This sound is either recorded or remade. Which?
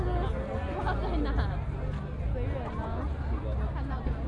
recorded